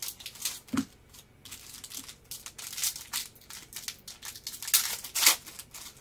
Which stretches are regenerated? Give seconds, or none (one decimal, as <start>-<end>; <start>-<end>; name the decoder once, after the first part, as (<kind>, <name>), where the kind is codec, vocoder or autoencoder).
none